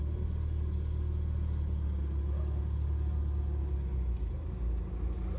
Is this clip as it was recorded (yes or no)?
yes